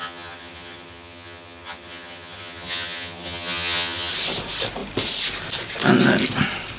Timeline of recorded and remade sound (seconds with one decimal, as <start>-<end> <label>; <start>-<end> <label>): 0.0-4.1 remade; 4.1-6.8 recorded